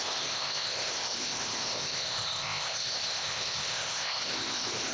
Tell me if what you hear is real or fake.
fake